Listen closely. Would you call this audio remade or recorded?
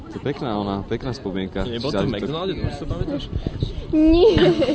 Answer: recorded